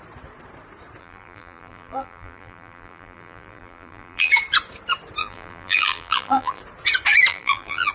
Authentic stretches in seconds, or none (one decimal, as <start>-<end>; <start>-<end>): 0.0-1.0; 4.3-5.2; 6.6-7.3

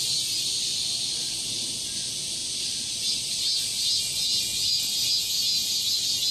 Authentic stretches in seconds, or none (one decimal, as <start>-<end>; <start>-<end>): 0.0-6.3